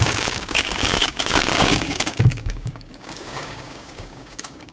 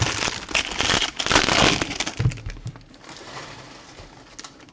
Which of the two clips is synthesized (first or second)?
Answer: first